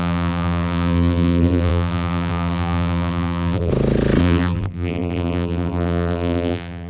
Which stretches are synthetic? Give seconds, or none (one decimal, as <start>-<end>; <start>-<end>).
0.0-3.7; 4.2-6.9